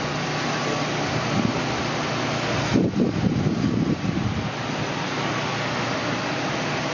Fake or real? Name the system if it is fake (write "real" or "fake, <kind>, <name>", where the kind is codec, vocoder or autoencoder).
real